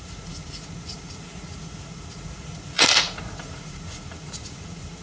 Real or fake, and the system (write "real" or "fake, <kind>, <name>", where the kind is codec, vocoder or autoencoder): fake, vocoder, Vocos